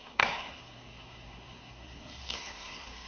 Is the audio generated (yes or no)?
yes